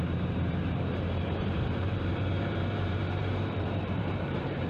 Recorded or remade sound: remade